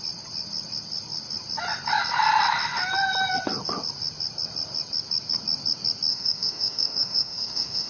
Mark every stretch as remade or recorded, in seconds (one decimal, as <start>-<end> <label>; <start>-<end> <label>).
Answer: 0.0-6.1 recorded; 6.1-7.9 remade